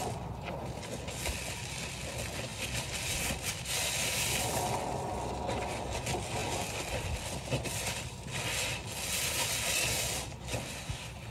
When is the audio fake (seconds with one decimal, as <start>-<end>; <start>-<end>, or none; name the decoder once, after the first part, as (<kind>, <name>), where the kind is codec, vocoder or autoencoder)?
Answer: none